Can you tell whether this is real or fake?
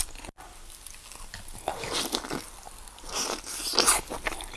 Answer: real